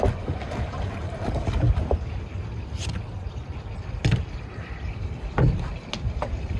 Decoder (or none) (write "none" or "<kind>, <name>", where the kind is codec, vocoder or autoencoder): none